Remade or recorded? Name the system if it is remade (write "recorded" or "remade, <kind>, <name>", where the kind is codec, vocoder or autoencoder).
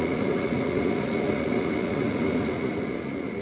remade, vocoder, Vocos